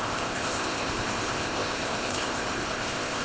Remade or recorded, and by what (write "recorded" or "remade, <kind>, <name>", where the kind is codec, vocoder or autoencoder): remade, codec, ZipCodec